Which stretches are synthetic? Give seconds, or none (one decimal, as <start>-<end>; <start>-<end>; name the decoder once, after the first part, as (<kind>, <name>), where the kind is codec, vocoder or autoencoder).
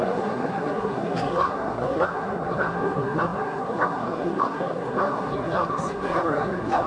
0.0-6.9 (codec, SNAC)